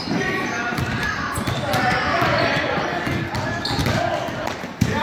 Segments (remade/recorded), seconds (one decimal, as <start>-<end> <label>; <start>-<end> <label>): 0.0-0.7 recorded; 0.7-3.7 remade; 3.7-5.0 recorded